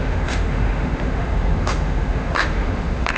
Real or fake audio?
fake